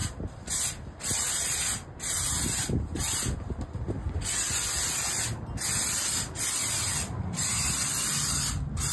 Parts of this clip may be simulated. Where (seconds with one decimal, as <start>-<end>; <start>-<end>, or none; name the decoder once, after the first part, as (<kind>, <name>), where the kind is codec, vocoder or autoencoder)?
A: none